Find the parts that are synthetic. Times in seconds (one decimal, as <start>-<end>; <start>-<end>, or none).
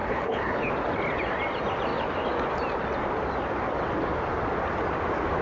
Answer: 0.0-0.7